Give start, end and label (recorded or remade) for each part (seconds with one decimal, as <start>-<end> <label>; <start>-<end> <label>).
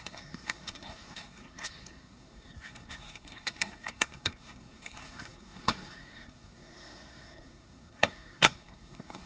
0.0-9.3 remade